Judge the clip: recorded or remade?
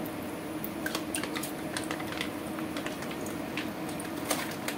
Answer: recorded